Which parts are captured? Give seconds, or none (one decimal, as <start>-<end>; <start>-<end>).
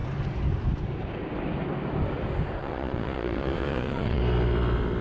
0.0-2.6; 4.2-5.0